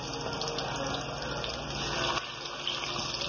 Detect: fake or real real